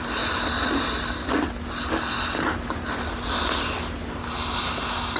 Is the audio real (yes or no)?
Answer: yes